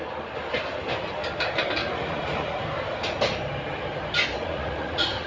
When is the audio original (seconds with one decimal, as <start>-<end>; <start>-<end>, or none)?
0.0-1.8; 2.6-4.4